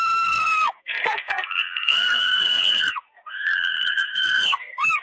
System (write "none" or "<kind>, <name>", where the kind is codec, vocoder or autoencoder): codec, SNAC